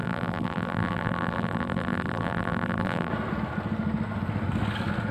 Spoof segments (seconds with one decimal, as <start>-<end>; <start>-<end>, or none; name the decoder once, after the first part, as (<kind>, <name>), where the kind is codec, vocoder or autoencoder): 0.0-3.1 (vocoder, BigVGAN v2)